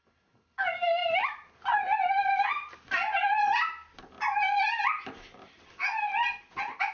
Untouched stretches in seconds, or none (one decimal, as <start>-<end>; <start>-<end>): 0.0-6.9